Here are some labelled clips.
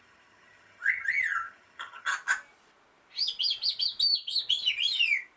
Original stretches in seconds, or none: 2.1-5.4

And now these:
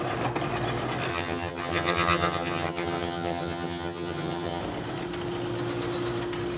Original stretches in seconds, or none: 0.0-1.1; 4.6-6.6

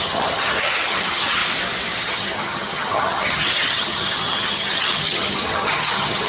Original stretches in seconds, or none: 1.4-2.0

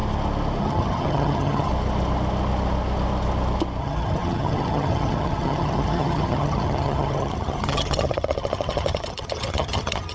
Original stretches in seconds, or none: 0.0-0.6; 1.7-3.8

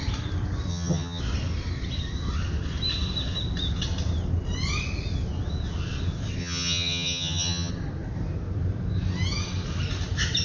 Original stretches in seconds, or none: 0.0-0.7; 1.2-6.4; 7.7-10.4